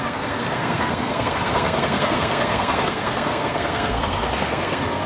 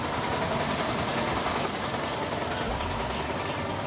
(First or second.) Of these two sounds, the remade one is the first